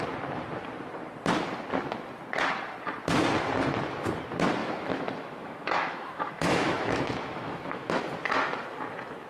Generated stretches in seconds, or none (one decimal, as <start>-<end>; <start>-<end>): 4.6-8.0